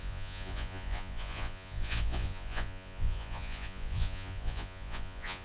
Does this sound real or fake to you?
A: fake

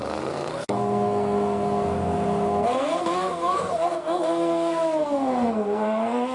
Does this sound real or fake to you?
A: fake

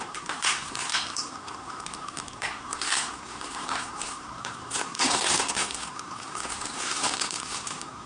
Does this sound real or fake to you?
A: fake